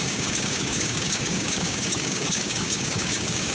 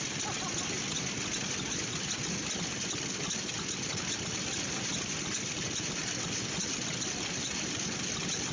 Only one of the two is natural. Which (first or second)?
second